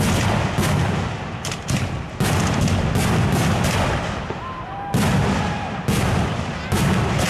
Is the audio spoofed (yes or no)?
no